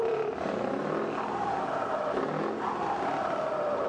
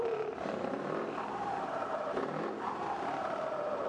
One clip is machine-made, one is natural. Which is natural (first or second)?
first